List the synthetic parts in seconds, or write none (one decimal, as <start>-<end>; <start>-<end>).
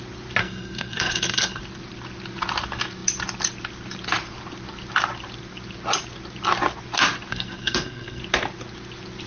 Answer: 0.4-1.6; 7.3-8.2